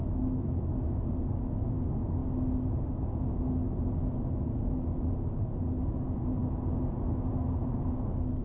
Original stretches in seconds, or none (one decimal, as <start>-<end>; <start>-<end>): 0.8-8.4